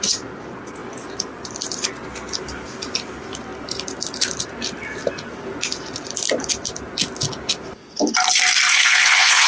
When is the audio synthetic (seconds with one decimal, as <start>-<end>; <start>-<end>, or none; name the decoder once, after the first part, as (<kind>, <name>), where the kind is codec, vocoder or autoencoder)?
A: 8.7-9.5 (codec, HILCodec)